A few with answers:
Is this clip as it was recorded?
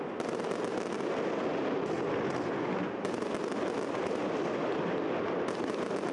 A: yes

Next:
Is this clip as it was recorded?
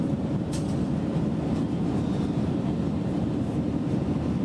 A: yes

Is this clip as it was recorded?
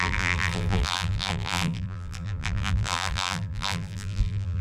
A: no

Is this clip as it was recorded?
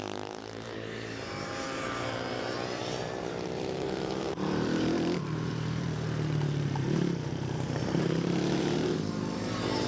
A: no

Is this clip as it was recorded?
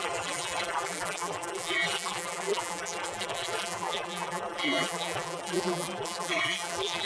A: no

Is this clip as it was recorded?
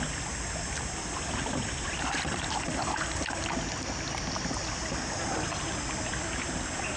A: yes